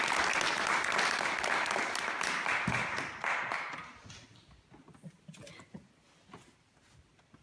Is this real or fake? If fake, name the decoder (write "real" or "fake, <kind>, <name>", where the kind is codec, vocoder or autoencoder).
real